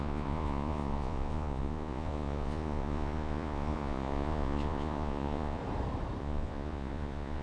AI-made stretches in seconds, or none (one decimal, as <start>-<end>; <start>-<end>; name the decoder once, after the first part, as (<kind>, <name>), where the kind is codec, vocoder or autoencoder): 0.0-5.6 (vocoder, Vocos); 6.2-7.4